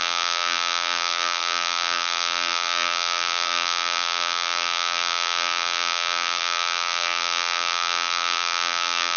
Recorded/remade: remade